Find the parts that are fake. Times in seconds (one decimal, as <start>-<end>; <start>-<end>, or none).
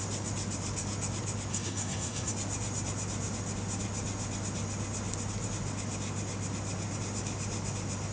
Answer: 1.5-2.3